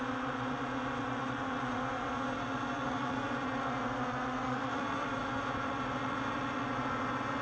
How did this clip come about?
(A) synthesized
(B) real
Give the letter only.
A